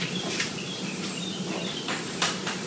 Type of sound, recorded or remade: remade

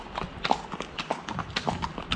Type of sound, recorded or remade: recorded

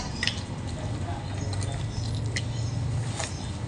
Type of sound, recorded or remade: recorded